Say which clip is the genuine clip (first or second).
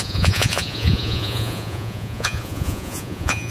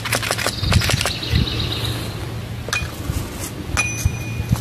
second